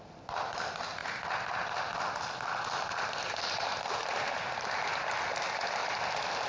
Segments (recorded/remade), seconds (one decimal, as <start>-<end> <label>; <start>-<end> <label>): 0.0-5.8 recorded; 5.8-6.5 remade